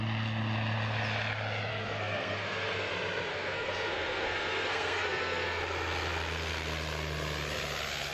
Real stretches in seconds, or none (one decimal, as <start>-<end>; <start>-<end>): 0.0-1.7; 2.9-3.3; 5.6-8.1